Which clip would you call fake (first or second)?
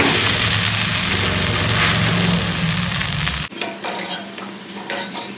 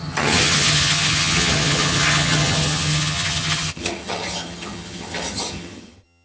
second